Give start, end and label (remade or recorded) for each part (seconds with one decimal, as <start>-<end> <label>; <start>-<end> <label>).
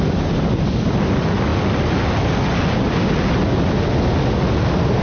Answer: 0.0-5.0 recorded